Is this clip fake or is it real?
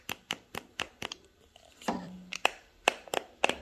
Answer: fake